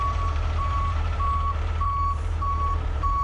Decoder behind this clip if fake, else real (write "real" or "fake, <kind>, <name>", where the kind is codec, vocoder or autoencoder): fake, vocoder, BigVGAN v2